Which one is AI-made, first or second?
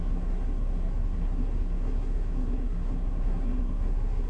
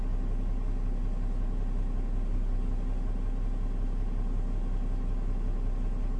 first